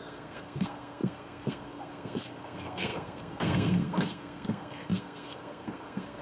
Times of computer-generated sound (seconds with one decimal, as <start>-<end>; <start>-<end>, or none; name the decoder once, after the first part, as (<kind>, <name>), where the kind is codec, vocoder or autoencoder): 0.0-6.2 (codec, SNAC)